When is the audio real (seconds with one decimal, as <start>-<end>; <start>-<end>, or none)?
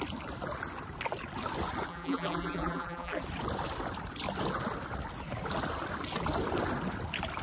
0.0-1.9; 3.2-7.4